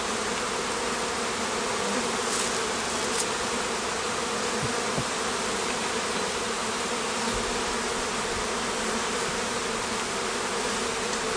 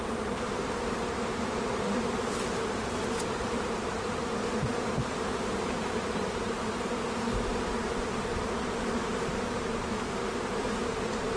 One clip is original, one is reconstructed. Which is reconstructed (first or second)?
second